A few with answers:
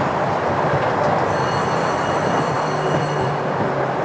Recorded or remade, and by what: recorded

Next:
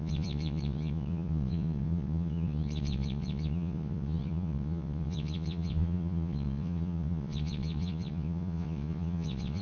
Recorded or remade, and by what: remade, vocoder, Vocos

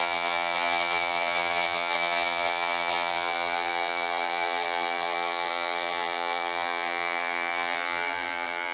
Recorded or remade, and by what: remade, vocoder, BigVGAN v2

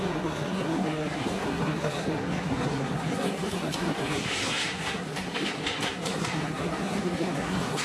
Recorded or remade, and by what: remade, codec, SNAC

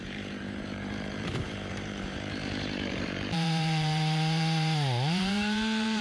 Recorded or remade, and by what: remade, vocoder, BigVGAN v2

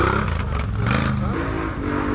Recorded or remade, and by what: recorded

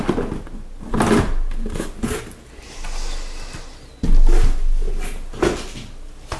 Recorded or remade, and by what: recorded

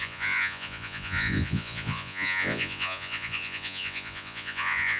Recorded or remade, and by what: remade, vocoder, Vocos